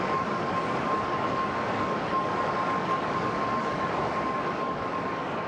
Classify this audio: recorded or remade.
remade